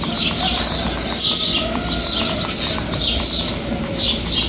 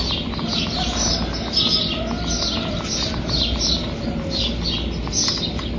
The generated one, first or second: first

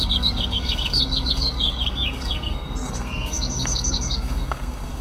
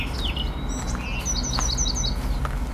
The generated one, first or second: first